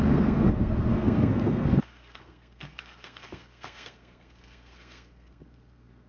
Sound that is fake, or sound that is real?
fake